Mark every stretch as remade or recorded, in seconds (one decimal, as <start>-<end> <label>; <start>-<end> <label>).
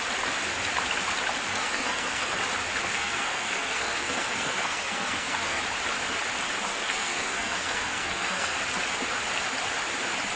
0.0-1.5 recorded; 1.5-2.4 remade; 2.4-2.8 recorded; 2.8-5.6 remade; 5.6-6.7 recorded; 6.7-8.6 remade; 8.6-10.4 recorded